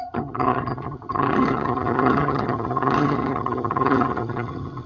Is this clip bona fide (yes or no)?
no